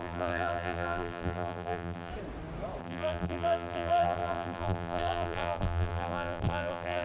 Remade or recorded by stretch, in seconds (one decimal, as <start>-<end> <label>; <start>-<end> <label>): 0.0-2.1 remade; 2.1-2.8 recorded; 2.8-7.0 remade